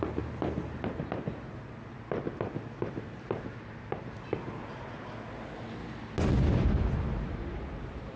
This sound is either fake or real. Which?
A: real